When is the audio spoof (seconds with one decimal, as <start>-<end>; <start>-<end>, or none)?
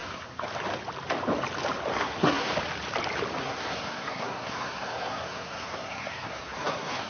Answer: 0.0-0.5; 1.9-2.5; 3.4-7.1